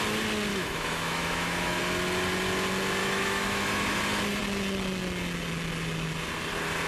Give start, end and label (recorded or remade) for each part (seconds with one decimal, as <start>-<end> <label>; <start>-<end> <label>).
0.0-0.5 recorded; 0.5-1.8 remade; 1.8-3.0 recorded; 3.0-4.0 remade; 4.0-6.9 recorded